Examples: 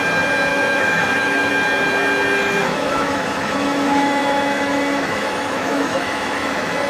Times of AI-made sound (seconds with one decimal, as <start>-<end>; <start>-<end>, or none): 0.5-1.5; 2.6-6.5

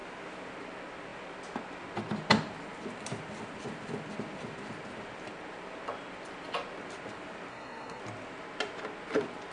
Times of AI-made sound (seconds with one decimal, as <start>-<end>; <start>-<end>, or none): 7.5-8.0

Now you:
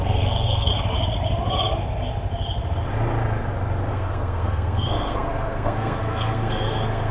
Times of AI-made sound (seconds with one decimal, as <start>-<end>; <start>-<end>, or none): 0.0-0.7; 3.9-7.1

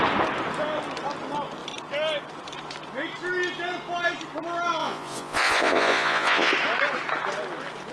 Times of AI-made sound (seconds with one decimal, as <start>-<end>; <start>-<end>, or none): 4.8-6.5

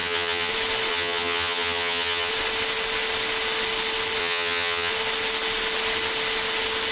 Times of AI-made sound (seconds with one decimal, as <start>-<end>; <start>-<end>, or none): 0.0-0.5; 0.9-2.3; 4.2-4.9